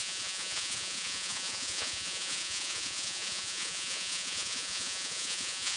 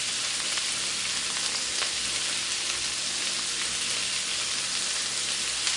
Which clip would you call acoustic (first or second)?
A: second